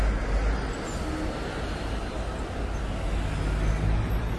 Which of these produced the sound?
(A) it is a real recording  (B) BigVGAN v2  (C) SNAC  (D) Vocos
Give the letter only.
A